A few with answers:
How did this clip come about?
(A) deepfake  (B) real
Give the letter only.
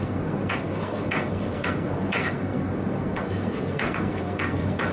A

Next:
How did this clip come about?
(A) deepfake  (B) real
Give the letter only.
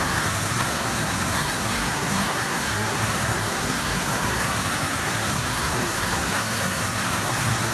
A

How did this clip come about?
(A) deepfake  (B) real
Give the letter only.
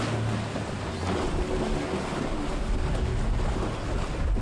B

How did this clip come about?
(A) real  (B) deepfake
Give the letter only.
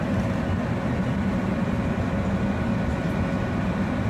A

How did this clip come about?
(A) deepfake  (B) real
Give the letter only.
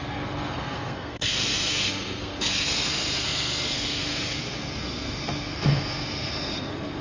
A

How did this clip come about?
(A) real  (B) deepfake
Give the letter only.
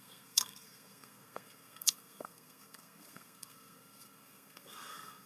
B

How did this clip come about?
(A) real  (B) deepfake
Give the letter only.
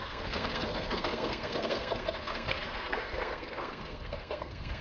B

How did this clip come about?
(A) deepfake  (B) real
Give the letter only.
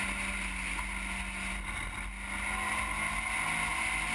B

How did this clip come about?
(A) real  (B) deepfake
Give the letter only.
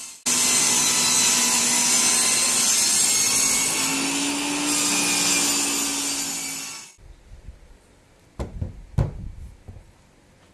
A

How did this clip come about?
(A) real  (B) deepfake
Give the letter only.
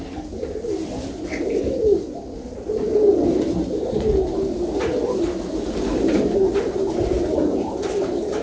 A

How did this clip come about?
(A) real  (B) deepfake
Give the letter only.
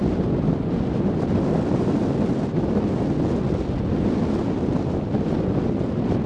A